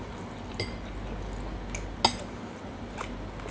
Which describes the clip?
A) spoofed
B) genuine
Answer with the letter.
B